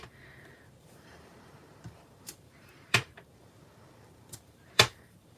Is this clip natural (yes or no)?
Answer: no